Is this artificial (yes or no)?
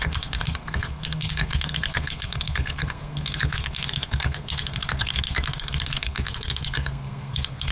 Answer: yes